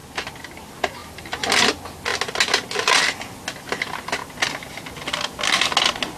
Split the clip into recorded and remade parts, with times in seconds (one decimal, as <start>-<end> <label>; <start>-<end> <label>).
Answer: 0.0-6.2 recorded